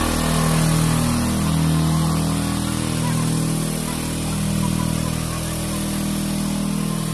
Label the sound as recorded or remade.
recorded